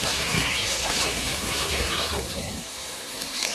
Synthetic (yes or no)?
yes